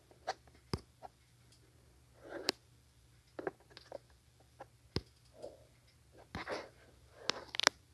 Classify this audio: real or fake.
real